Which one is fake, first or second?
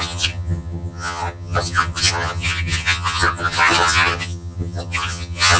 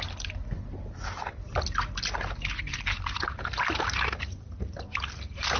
first